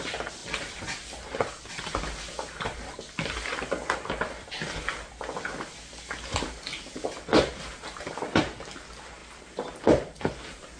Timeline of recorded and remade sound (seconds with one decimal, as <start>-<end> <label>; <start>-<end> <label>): 0.0-10.8 recorded